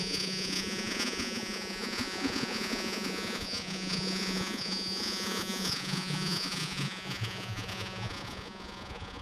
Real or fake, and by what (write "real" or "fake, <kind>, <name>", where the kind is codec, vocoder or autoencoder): fake, vocoder, Vocos